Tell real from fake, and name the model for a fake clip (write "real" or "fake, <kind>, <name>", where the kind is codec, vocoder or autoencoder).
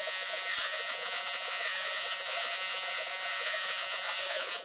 fake, vocoder, Vocos